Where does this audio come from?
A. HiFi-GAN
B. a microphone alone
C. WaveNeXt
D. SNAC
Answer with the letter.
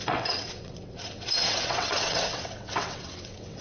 C